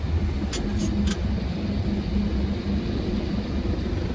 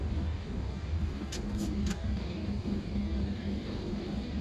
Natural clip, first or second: first